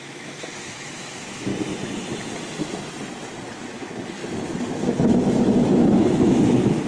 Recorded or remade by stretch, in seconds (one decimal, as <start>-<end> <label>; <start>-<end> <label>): 0.0-1.5 remade; 1.5-3.7 recorded; 3.7-4.2 remade; 4.2-4.7 recorded; 4.7-6.9 remade